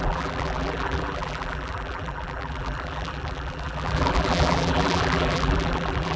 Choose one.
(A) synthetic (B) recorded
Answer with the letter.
A